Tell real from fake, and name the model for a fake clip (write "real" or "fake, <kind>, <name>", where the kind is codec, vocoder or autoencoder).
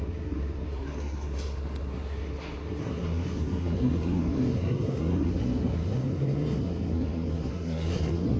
fake, codec, SNAC